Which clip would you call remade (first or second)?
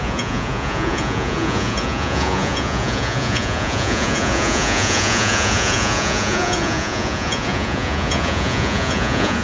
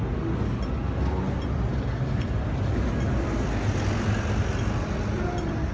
first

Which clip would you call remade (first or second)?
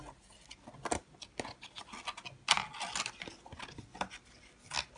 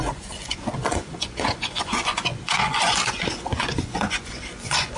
second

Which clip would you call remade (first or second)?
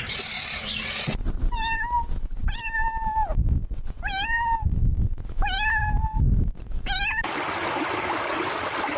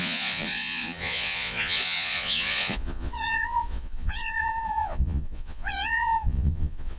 second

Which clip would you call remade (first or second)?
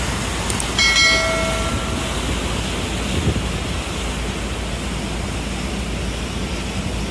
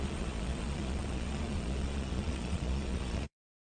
second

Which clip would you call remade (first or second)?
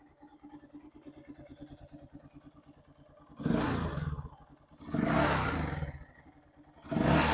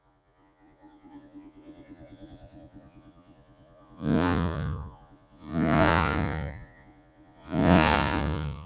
second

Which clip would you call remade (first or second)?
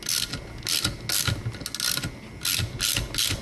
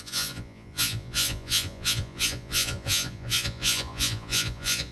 second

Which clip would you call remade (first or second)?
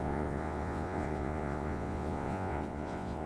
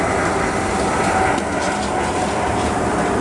first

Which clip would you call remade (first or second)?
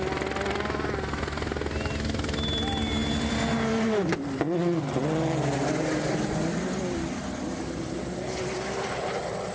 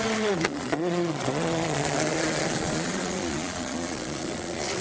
second